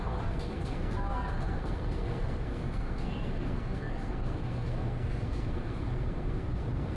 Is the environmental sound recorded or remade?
remade